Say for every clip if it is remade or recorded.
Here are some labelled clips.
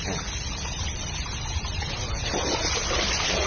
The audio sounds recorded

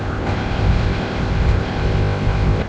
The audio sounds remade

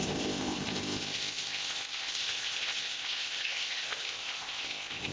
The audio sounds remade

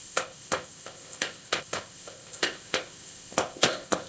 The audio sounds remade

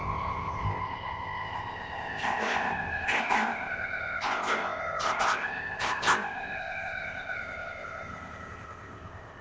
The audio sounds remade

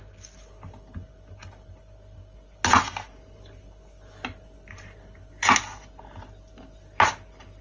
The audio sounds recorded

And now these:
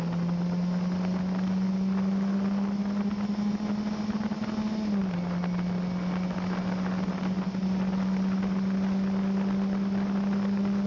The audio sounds recorded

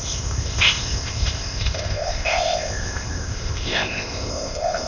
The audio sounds remade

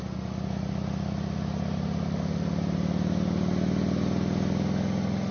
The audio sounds recorded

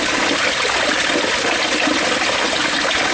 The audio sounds recorded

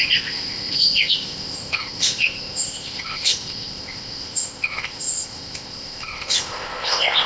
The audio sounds remade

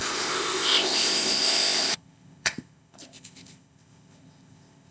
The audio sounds remade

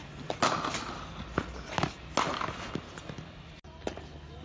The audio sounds recorded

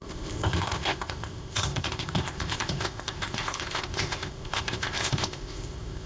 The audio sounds remade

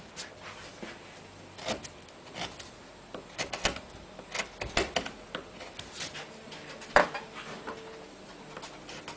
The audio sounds recorded